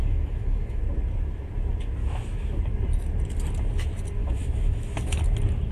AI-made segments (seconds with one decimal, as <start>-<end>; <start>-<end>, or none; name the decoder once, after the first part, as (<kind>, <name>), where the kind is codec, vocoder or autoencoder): 0.0-0.8 (autoencoder, DAC-VAE); 2.0-2.6; 4.2-5.2